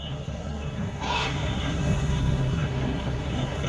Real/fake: fake